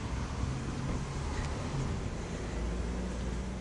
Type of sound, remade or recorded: recorded